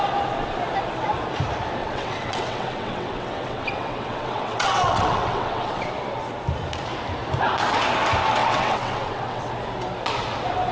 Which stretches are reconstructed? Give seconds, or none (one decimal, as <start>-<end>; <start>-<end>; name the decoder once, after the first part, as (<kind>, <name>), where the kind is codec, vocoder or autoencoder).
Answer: 1.8-5.9 (vocoder, WaveNeXt); 8.4-9.5